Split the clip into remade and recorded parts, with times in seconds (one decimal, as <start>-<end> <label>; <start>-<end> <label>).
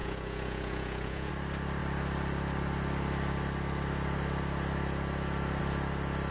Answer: 0.0-1.3 remade; 1.3-6.3 recorded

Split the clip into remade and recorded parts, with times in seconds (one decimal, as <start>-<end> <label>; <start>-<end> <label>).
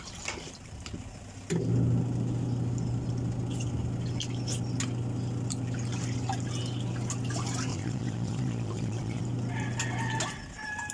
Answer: 0.0-7.7 recorded; 7.7-9.2 remade; 9.2-10.9 recorded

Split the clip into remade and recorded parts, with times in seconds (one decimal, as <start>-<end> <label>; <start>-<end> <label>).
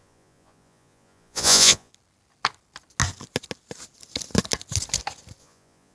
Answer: 0.0-1.9 remade; 1.9-5.4 recorded; 5.4-5.9 remade